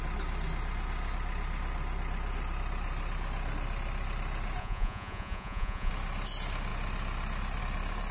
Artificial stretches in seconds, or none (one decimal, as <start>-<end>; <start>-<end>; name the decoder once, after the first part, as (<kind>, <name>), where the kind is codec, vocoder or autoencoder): 4.6-5.9 (vocoder, Vocos)